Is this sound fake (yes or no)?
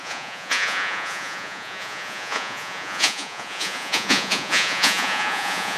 yes